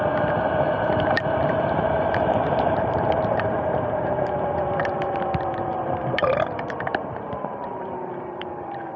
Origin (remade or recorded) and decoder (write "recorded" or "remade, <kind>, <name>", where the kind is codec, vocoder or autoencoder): remade, vocoder, BigVGAN v2